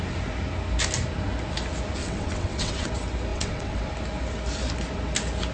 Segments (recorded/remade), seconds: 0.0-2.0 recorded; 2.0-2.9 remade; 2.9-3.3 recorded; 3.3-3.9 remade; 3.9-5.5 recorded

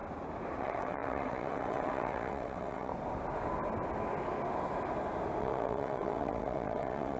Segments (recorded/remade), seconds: 0.0-0.6 recorded; 0.6-2.9 remade; 2.9-5.4 recorded; 5.4-7.2 remade